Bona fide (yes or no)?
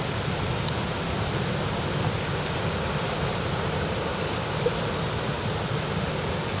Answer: yes